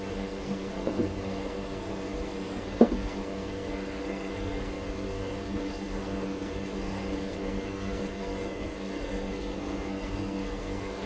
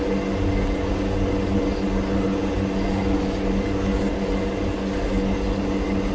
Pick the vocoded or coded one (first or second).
first